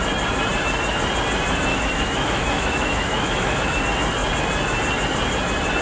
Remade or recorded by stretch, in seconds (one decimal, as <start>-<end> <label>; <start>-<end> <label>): 0.0-1.7 recorded; 1.7-3.8 remade; 3.8-5.8 recorded